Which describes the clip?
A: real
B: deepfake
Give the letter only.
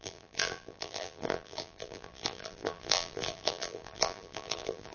B